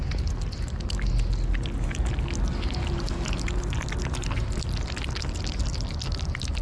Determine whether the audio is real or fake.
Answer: real